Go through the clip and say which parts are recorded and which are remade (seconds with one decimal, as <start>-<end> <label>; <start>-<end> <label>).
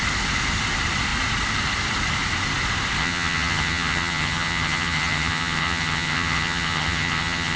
0.0-3.0 recorded; 3.0-7.6 remade